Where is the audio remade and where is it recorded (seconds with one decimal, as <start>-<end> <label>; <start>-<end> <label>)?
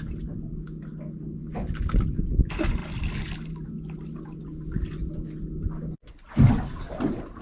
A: 0.0-7.4 recorded